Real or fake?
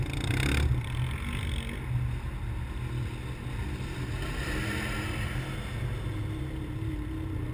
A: real